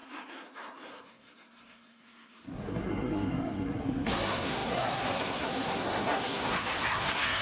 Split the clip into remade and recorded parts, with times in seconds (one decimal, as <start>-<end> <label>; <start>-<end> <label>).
0.0-7.4 remade